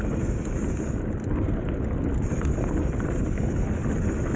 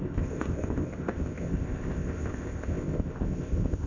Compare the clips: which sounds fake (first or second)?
second